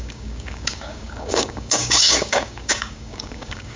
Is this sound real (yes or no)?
no